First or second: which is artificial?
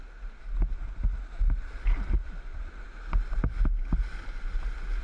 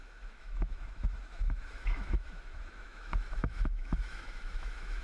second